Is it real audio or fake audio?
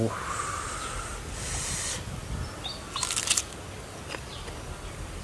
real